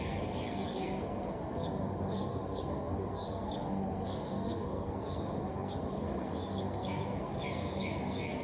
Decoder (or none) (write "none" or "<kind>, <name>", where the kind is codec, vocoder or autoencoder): codec, SNAC